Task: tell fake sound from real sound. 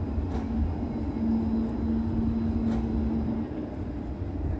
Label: real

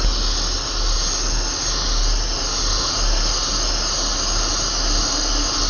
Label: real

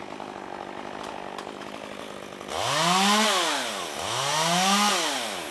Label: real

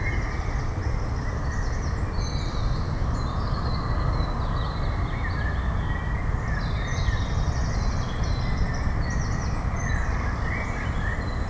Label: real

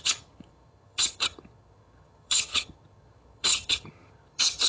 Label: fake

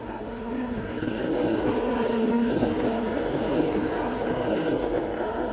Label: fake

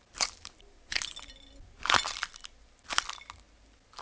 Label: real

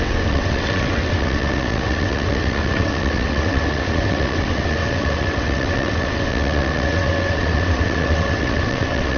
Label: fake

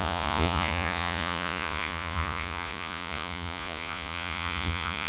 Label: fake